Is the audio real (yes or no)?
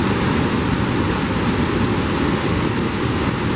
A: yes